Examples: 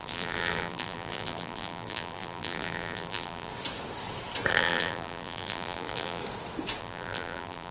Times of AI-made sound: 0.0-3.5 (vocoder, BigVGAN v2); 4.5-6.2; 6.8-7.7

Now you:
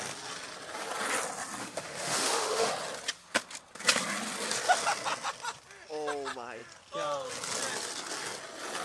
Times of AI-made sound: 1.6-2.7 (autoencoder, DAC-VAE)

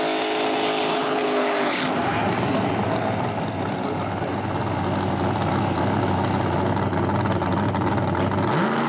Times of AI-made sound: 0.9-1.7 (codec, HILCodec)

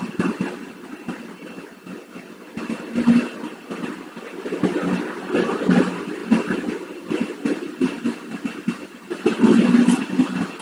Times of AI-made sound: none